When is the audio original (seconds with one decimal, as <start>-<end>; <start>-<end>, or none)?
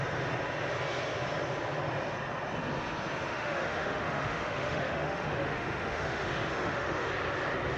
0.0-3.3; 7.1-7.8